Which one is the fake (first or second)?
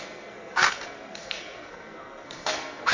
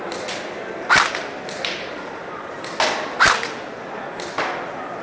first